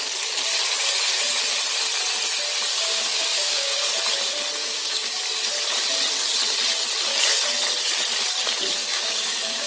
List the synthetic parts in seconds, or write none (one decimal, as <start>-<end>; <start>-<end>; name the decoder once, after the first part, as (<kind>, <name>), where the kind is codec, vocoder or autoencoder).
2.7-3.9 (codec, DAC); 4.6-5.2; 8.8-9.7